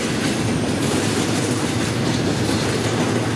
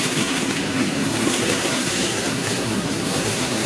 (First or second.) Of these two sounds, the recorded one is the first